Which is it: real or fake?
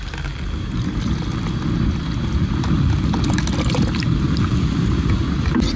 real